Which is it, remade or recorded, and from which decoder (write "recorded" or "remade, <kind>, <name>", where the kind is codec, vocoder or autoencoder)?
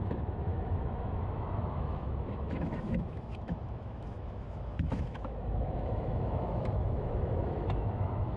remade, autoencoder, DAC-VAE